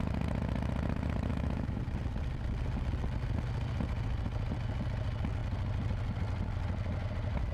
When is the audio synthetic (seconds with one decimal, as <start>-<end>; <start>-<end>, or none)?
1.3-1.8